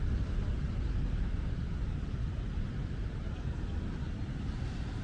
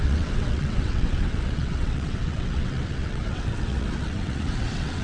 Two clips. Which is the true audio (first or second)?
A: first